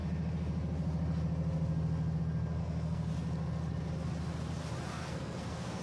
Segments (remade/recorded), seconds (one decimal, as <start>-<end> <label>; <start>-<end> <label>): 0.0-2.6 recorded; 2.6-3.1 remade; 3.1-4.9 recorded; 4.9-5.8 remade